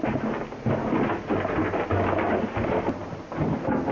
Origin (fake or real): real